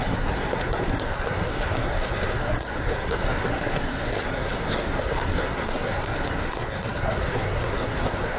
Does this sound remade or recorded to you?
remade